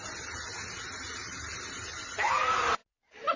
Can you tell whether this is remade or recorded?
recorded